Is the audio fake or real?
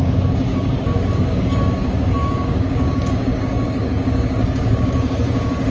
fake